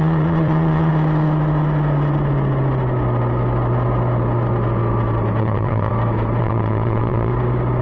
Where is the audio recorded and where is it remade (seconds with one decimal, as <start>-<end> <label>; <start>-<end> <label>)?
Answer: 0.0-0.9 remade; 0.9-5.4 recorded; 5.4-5.9 remade; 5.9-6.4 recorded; 6.4-7.3 remade; 7.3-7.8 recorded